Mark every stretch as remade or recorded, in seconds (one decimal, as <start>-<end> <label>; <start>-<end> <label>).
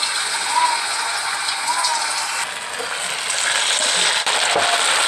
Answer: 0.0-1.9 remade; 1.9-5.1 recorded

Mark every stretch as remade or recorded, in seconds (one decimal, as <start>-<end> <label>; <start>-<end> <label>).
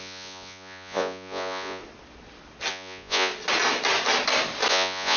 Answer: 0.0-1.8 remade; 1.8-2.7 recorded; 2.7-3.3 remade; 3.3-4.7 recorded; 4.7-5.2 remade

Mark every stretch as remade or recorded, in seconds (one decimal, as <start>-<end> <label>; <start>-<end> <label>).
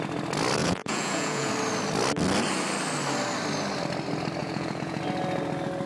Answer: 0.0-0.6 recorded; 0.6-1.5 remade; 1.5-4.4 recorded; 4.4-5.0 remade; 5.0-5.9 recorded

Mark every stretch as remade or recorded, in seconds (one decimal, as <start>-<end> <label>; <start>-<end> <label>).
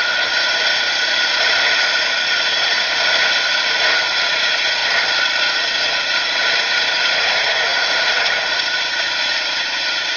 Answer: 0.0-4.8 remade; 4.8-5.4 recorded; 5.4-10.2 remade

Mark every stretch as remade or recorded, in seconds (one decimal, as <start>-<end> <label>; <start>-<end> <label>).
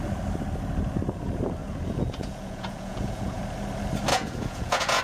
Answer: 0.0-1.6 recorded; 1.6-3.4 remade; 3.4-4.1 recorded; 4.1-5.0 remade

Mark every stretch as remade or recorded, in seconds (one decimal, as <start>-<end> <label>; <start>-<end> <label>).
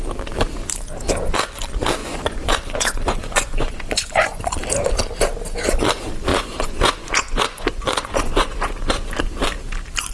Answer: 0.0-2.0 recorded; 2.0-4.4 remade; 4.4-6.3 recorded; 6.3-9.1 remade; 9.1-10.1 recorded